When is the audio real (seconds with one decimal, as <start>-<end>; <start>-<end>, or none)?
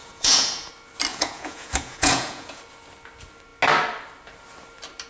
0.7-1.1; 2.6-5.1